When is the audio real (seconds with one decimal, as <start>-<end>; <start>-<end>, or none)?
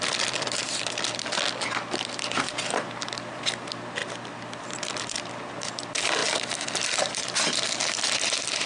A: 0.0-8.7